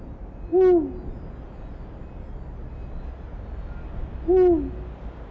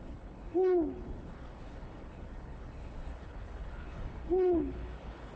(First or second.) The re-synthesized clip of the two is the second